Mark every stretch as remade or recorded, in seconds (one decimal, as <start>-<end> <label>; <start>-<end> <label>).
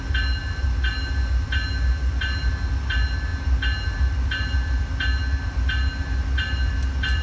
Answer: 0.0-7.2 recorded